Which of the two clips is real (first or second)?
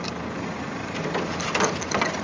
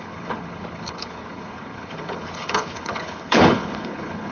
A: first